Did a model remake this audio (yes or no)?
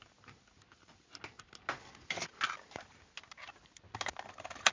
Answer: no